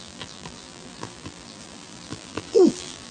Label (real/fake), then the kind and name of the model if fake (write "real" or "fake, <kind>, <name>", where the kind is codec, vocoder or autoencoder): fake, vocoder, BigVGAN v2